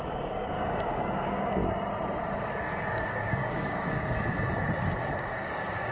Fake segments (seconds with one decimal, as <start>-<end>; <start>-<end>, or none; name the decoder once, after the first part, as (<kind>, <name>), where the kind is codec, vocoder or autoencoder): 0.0-1.6 (codec, DAC); 2.6-4.3; 5.2-5.9